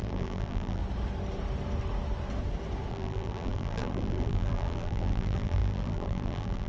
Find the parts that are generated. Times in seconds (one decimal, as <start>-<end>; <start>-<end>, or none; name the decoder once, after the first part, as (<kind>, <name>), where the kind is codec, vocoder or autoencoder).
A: 0.0-0.8 (vocoder, BigVGAN v2); 2.9-6.7